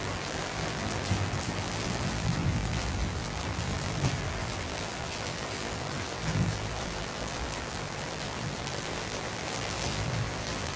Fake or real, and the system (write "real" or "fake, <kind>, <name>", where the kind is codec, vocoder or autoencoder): fake, vocoder, BigVGAN v2